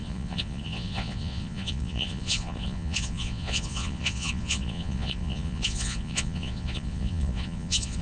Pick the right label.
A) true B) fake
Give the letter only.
B